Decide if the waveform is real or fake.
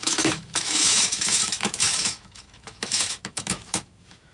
fake